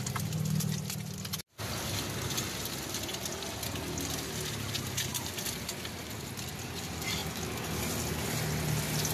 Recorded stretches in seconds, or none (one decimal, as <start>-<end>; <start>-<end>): 0.0-9.1